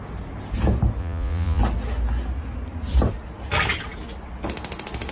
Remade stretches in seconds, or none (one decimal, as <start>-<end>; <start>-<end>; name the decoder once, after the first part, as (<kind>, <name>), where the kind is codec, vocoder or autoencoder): 1.0-1.6 (vocoder, Vocos)